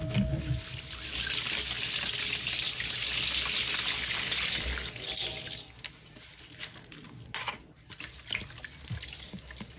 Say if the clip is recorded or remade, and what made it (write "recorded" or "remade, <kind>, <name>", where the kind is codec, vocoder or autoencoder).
recorded